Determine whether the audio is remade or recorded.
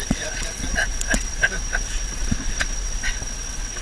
remade